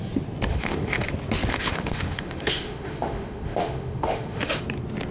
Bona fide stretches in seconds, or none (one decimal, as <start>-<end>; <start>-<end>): 0.0-0.5; 1.1-1.5; 4.6-5.1